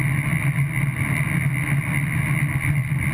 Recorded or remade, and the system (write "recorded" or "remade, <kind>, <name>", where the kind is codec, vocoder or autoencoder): recorded